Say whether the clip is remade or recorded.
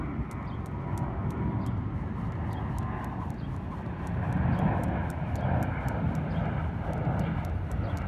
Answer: recorded